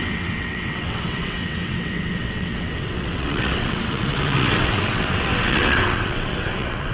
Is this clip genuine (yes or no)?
no